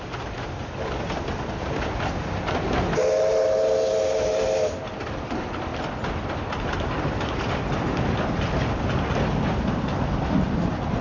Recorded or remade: recorded